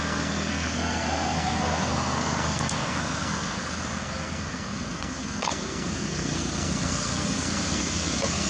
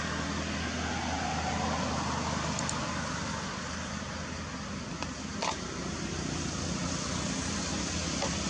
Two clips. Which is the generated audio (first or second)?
first